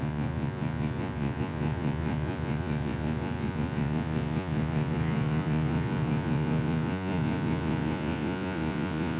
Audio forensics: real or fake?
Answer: fake